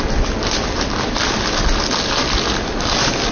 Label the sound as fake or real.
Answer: real